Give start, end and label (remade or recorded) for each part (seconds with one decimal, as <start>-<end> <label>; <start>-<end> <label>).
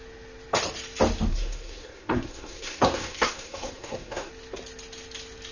0.0-1.3 recorded; 1.3-4.3 remade; 4.3-5.5 recorded